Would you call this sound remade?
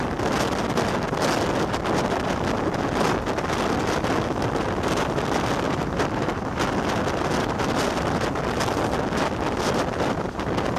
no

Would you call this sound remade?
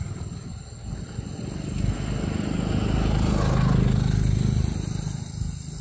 no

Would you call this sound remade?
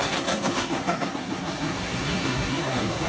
yes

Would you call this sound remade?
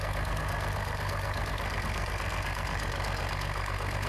yes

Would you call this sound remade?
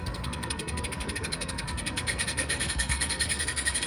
yes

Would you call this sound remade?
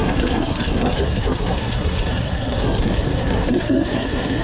yes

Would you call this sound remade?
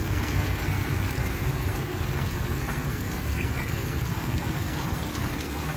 yes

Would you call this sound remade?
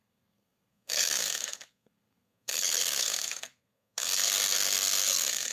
yes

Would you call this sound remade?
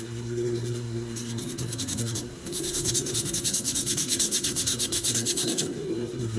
yes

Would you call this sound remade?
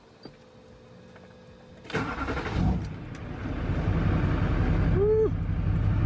no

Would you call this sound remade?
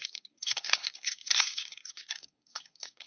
yes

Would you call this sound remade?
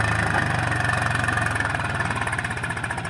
no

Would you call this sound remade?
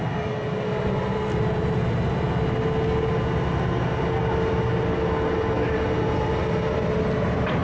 no